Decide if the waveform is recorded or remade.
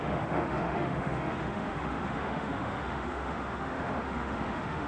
remade